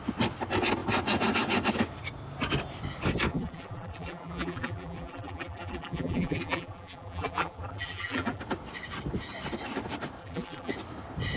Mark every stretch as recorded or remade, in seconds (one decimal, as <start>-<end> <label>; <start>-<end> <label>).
0.0-3.3 recorded; 3.3-8.4 remade; 8.4-10.2 recorded; 10.2-10.7 remade; 10.7-11.4 recorded